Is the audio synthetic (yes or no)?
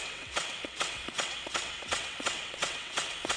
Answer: yes